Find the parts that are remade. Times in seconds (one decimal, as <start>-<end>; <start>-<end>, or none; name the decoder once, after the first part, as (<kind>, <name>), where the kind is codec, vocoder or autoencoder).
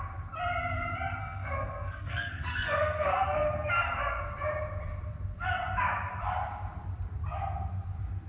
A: 1.2-4.2 (codec, SNAC)